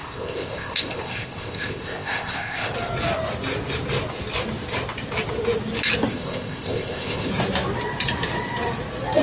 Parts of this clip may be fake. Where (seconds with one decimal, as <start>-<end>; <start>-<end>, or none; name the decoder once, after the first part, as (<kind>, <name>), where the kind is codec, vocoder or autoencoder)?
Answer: 0.0-2.7 (codec, ZipCodec); 6.1-7.3